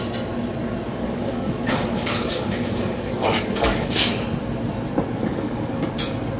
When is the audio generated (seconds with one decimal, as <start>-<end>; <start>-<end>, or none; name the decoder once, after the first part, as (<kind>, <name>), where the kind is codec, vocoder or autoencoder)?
0.9-4.1 (codec, DAC); 5.2-5.9